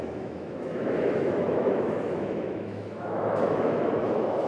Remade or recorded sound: remade